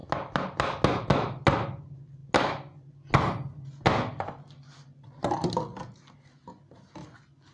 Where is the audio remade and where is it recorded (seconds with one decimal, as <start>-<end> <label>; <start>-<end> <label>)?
0.0-7.5 recorded